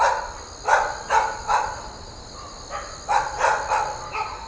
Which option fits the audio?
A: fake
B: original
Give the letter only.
B